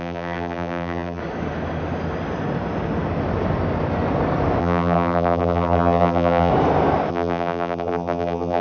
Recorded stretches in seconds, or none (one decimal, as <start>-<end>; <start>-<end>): 1.2-4.6; 6.5-7.1